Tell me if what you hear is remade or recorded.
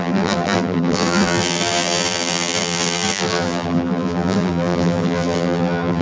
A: remade